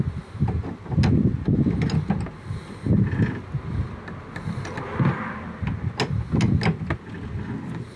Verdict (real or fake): real